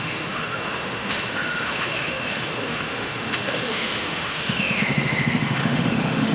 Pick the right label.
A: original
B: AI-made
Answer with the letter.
B